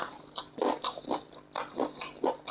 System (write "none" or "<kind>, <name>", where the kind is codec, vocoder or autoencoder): none